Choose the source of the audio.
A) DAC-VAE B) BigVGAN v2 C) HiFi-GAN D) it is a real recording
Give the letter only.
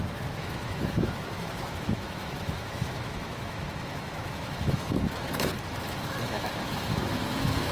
A